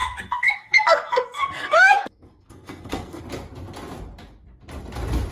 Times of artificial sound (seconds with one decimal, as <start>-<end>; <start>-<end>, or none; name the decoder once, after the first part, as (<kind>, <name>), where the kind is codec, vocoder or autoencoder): 0.0-3.2 (codec, SNAC)